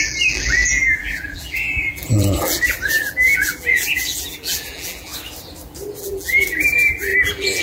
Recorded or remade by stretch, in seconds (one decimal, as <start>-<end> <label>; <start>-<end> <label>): 0.0-5.1 remade; 5.1-6.0 recorded; 6.0-7.6 remade